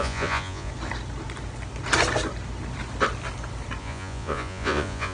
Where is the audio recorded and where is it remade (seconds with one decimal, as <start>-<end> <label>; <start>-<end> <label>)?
0.0-0.7 remade; 0.7-3.8 recorded; 3.8-5.1 remade